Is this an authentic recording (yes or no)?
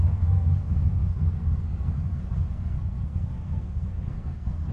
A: no